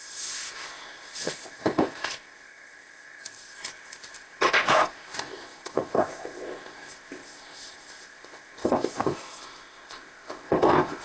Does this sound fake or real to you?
fake